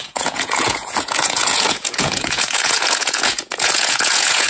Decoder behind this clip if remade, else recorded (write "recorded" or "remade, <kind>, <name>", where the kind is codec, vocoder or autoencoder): remade, vocoder, Vocos